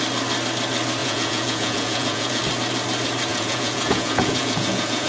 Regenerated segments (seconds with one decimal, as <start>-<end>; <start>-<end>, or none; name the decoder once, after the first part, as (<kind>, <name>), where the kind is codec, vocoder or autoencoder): 1.0-2.4 (vocoder, Vocos); 3.3-5.1